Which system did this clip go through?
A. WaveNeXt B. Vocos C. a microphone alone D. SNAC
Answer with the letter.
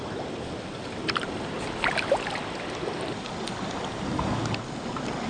C